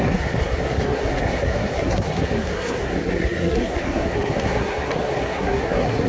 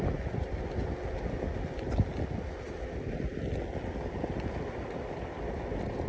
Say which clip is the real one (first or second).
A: second